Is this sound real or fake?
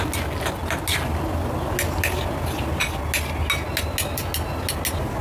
real